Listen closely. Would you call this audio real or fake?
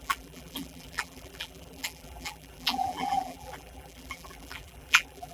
fake